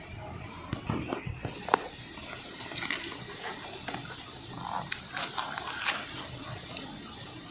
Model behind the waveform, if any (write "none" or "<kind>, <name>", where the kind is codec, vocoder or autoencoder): none